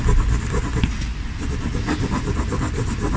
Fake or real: real